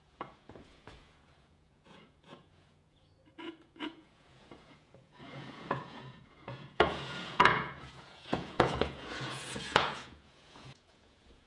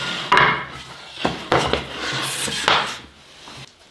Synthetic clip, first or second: first